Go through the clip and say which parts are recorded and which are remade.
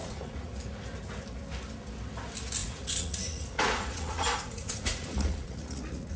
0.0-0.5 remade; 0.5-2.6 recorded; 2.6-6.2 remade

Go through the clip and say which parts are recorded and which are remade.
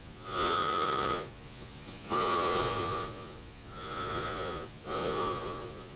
0.0-6.0 remade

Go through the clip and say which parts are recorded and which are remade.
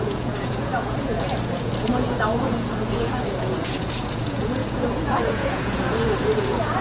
0.0-6.8 remade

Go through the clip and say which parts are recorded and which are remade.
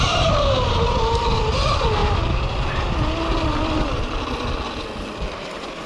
0.0-5.9 recorded